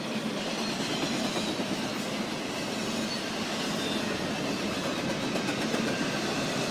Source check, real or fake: fake